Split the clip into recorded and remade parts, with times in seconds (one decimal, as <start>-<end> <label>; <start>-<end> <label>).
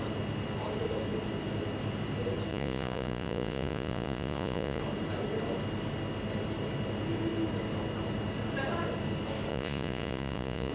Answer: 0.0-2.5 recorded; 2.5-4.8 remade; 4.8-9.5 recorded; 9.5-10.7 remade